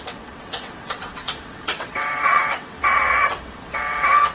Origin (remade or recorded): remade